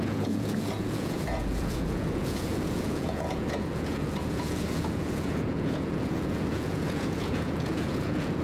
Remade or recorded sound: remade